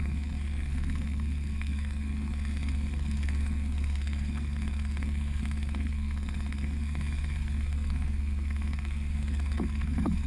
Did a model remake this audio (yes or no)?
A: yes